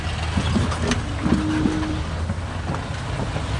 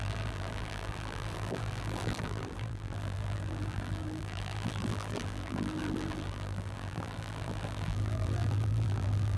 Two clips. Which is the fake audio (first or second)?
second